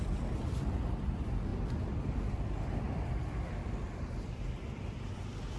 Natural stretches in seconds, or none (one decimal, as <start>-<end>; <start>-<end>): none